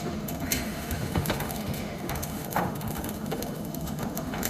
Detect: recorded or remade remade